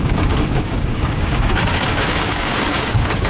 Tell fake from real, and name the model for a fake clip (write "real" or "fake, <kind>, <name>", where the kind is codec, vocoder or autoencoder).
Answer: fake, codec, DAC